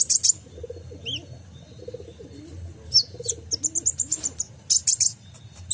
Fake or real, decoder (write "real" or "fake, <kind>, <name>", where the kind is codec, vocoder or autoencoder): real